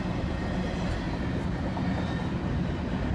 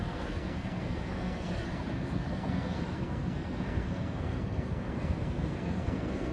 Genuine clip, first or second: first